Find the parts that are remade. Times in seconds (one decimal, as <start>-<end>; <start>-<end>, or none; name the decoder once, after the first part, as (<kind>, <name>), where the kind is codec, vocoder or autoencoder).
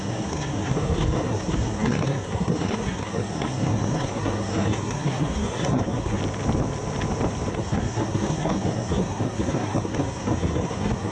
0.0-6.2 (codec, SNAC); 7.5-11.1